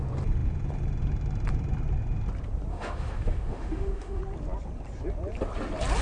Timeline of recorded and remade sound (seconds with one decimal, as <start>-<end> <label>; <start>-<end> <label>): 0.0-2.7 recorded; 2.7-4.2 remade; 4.2-6.0 recorded